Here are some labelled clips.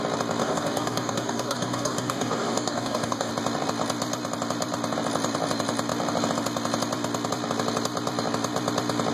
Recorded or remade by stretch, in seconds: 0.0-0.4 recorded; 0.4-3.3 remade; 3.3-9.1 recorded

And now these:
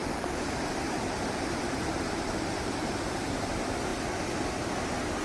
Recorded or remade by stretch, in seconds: 0.0-2.8 remade; 2.8-5.2 recorded

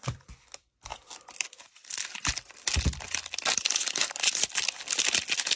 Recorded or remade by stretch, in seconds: 0.0-5.6 recorded

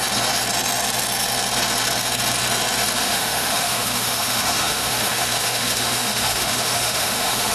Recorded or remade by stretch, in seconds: 0.0-3.0 recorded; 3.0-7.5 remade

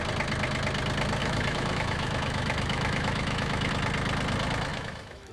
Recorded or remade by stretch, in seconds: 0.0-1.2 recorded; 1.2-3.7 remade; 3.7-4.7 recorded; 4.7-5.3 remade

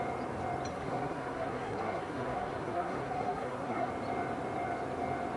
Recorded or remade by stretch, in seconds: 0.0-0.7 recorded; 0.7-3.9 remade; 3.9-5.4 recorded

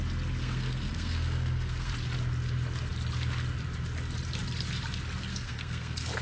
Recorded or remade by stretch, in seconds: 0.0-0.4 recorded; 0.4-1.9 remade; 1.9-5.3 recorded; 5.3-6.2 remade